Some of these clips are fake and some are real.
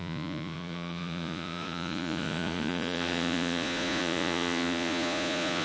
fake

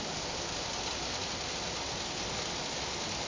real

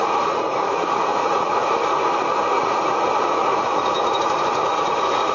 fake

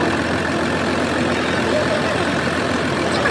real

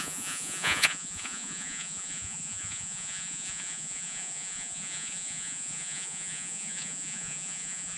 fake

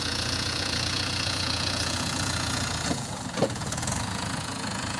fake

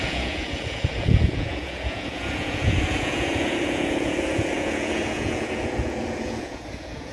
fake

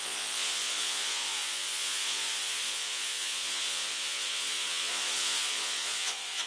fake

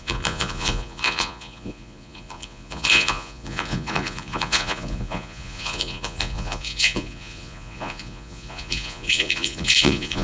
fake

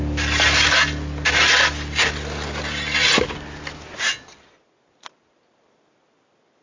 real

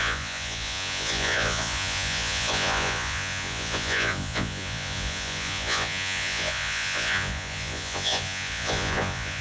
fake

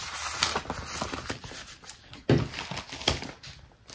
real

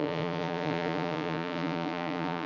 fake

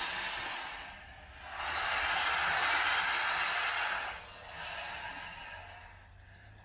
real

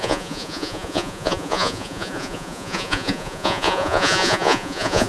fake